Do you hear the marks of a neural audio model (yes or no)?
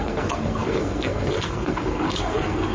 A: yes